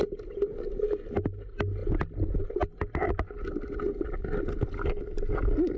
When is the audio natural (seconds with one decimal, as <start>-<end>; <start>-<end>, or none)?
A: 0.0-5.8